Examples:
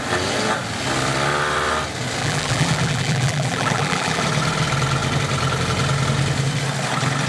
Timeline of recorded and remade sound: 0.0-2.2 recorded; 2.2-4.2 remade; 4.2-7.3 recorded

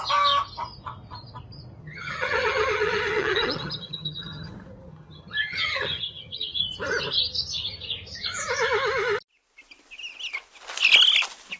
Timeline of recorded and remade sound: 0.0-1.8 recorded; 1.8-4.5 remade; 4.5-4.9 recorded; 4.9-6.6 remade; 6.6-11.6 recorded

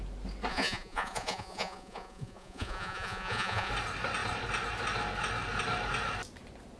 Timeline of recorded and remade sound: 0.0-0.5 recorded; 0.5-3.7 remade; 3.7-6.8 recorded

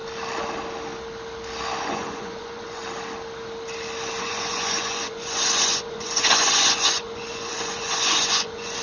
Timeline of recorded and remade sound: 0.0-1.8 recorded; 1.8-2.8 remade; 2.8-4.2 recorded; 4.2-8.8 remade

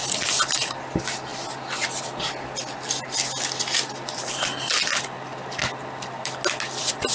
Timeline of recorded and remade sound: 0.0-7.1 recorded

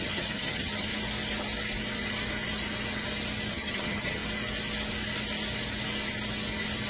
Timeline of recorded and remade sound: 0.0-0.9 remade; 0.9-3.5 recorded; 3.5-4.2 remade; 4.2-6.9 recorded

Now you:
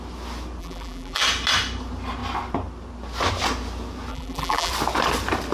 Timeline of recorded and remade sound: 0.0-0.6 recorded; 0.6-1.2 remade; 1.2-4.1 recorded; 4.1-4.7 remade; 4.7-5.5 recorded

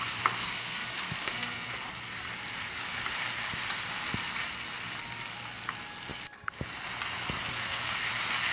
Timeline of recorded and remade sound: 0.0-0.4 recorded; 0.4-1.7 remade; 1.7-8.5 recorded